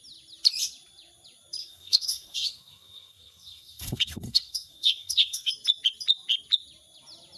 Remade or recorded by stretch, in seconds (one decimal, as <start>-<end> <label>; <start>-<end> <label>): 0.0-1.6 recorded; 1.6-5.5 remade; 5.5-7.4 recorded